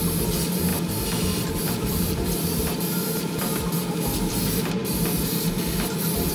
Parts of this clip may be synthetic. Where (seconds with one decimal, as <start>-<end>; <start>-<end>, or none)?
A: none